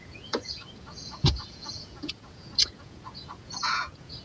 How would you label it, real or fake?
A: fake